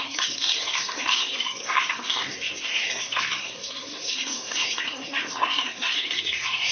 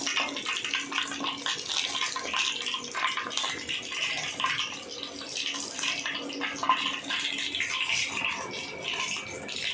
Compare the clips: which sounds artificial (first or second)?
first